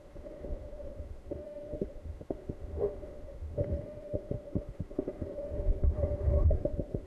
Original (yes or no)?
no